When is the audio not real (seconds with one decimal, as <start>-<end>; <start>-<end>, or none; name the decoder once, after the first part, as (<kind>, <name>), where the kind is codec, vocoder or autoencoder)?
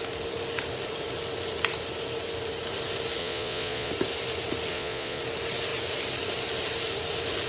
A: 3.2-3.9 (vocoder, Vocos); 4.7-5.2